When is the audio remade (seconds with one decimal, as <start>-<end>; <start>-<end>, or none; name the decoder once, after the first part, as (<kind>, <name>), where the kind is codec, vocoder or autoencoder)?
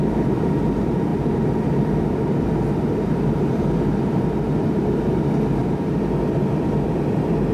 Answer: none